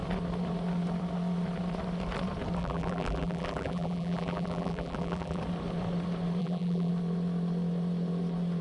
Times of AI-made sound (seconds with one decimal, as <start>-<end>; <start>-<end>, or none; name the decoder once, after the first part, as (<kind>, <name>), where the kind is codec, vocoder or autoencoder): 2.6-5.4 (vocoder, BigVGAN v2); 6.4-6.9